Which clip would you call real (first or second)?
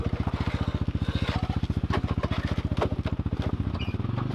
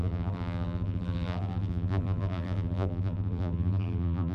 first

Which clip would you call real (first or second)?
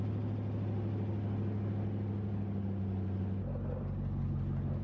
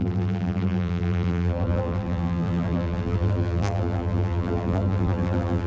first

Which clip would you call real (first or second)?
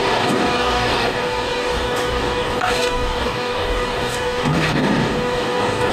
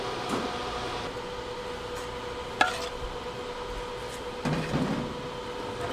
second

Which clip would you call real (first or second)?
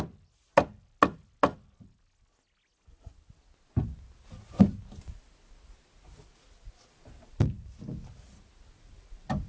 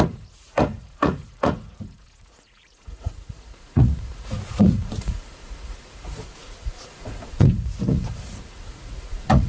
first